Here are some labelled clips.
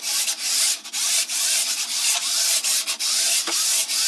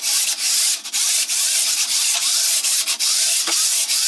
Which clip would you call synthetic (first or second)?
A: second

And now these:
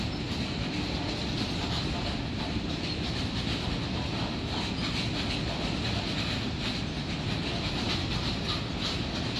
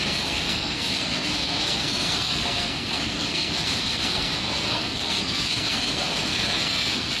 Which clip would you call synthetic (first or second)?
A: second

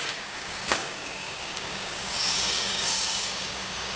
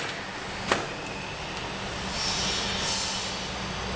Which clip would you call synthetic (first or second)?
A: first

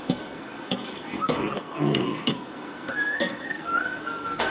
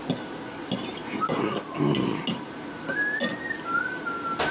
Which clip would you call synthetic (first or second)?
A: first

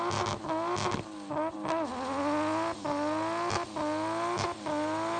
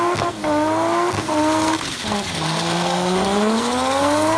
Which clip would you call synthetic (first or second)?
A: second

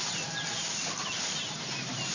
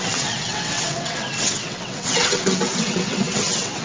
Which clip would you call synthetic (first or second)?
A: second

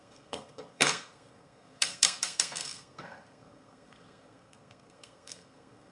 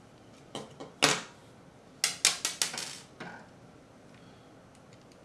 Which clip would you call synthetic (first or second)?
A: first